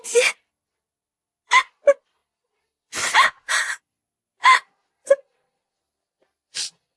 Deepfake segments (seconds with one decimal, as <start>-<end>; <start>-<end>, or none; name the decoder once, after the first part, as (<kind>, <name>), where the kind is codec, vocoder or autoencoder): none